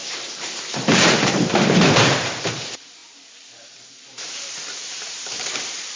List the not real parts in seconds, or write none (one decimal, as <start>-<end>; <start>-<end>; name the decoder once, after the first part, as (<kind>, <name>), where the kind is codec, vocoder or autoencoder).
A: 0.0-6.0 (vocoder, BigVGAN v2)

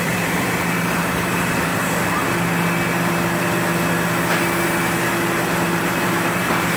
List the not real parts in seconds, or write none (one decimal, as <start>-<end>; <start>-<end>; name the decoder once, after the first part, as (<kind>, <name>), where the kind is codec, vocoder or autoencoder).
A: 0.0-1.7 (vocoder, BigVGAN v2); 5.8-6.8

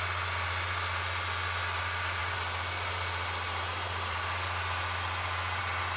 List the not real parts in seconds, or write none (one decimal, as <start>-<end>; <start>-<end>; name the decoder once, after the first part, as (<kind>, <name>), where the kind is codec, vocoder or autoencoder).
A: none

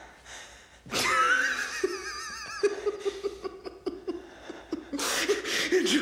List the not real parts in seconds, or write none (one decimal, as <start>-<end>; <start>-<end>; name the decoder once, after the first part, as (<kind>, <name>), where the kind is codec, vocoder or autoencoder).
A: none

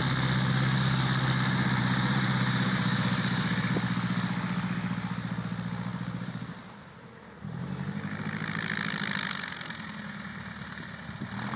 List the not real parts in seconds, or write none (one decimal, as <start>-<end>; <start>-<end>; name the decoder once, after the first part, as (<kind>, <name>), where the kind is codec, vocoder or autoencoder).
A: 1.8-3.7 (vocoder, BigVGAN v2); 5.9-8.2

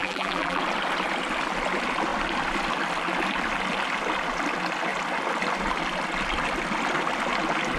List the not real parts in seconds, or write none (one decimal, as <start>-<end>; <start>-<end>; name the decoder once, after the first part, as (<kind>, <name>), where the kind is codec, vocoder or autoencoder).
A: 0.0-0.6 (vocoder, BigVGAN v2)

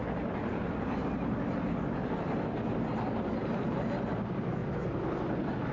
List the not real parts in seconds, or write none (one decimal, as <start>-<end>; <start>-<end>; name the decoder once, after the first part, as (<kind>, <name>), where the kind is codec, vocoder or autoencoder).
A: 4.6-5.7 (vocoder, BigVGAN v2)